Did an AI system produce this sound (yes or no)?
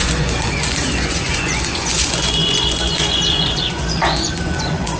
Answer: yes